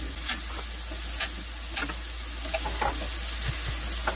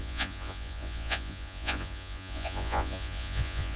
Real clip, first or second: first